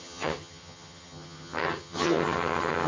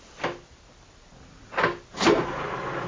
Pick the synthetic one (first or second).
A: first